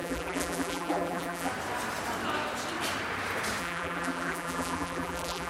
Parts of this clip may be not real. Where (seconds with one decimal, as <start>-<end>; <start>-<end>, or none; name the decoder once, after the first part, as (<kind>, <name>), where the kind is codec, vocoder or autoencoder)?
0.0-1.5 (vocoder, BigVGAN v2); 3.6-5.5